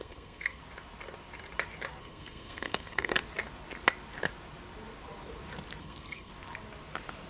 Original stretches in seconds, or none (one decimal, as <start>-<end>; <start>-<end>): 0.6-2.0; 3.1-5.8; 6.3-7.3